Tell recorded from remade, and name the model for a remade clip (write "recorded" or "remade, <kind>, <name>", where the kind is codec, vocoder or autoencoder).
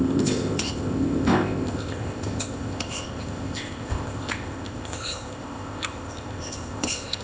remade, codec, ZipCodec